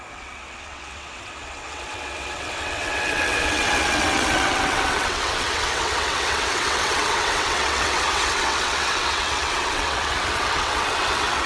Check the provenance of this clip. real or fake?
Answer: fake